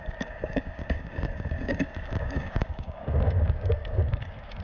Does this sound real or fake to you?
fake